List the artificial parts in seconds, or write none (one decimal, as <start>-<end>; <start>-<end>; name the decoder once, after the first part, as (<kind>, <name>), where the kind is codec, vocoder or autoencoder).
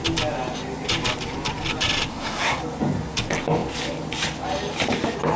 2.1-2.6 (codec, SNAC)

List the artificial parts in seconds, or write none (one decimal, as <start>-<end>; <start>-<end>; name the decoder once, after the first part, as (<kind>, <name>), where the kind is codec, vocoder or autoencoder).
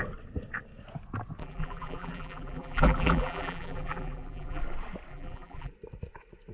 1.4-4.6 (vocoder, BigVGAN v2); 5.1-5.7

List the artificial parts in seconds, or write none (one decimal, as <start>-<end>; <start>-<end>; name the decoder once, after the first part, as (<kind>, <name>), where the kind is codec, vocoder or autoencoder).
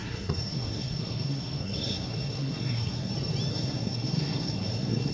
0.0-3.1 (codec, SNAC); 3.5-5.1